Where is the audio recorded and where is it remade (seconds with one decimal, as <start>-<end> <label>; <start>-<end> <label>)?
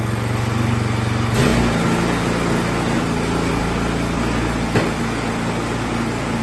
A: 0.0-6.4 recorded